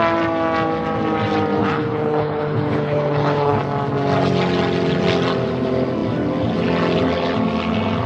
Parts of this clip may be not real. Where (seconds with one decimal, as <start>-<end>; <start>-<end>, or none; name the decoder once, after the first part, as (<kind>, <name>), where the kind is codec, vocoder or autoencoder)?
1.6-3.6 (codec, HILCodec)